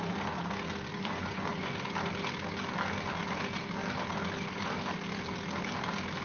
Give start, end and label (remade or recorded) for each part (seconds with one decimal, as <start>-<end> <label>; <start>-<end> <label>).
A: 0.0-0.9 recorded; 0.9-1.7 remade; 1.7-6.2 recorded